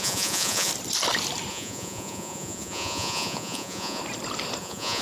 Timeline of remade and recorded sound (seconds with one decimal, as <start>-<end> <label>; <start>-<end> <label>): 0.0-0.7 remade; 0.7-1.5 recorded; 1.5-4.0 remade; 4.0-4.6 recorded; 4.6-5.0 remade